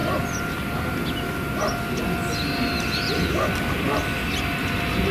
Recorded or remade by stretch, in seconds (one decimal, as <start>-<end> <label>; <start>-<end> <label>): 0.0-5.1 recorded